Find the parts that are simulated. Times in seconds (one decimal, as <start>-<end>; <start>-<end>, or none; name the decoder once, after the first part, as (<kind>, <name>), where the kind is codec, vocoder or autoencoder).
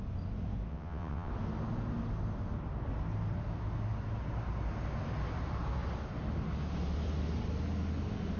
0.7-1.3 (vocoder, WaveNeXt)